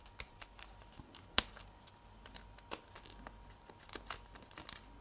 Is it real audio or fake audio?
real